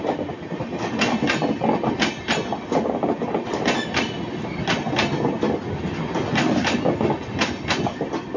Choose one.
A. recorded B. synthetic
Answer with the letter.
A